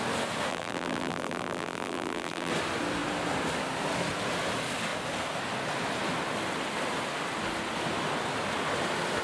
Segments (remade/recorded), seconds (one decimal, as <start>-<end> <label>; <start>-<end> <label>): 0.0-0.5 recorded; 0.5-2.5 remade; 2.5-9.2 recorded